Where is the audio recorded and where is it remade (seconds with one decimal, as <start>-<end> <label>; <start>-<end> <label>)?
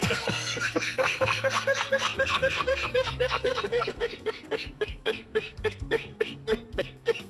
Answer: 0.0-7.3 remade